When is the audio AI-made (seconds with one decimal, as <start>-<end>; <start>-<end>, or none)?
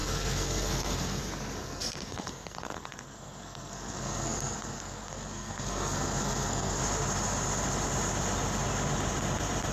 0.0-1.2; 1.6-6.8